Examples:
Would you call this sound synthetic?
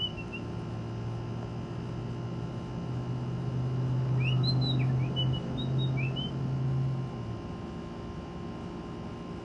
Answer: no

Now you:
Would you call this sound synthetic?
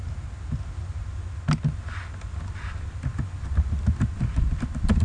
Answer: no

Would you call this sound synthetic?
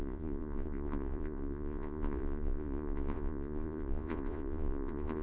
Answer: yes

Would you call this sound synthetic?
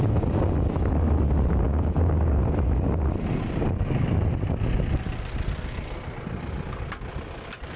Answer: no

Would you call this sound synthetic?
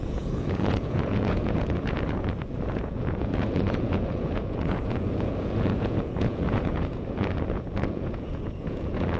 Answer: yes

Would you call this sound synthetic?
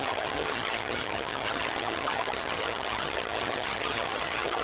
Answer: yes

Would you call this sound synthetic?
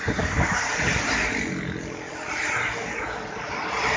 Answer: no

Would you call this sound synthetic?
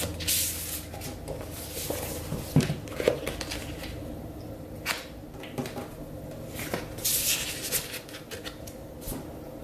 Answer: no